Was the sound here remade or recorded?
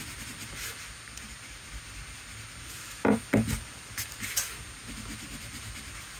recorded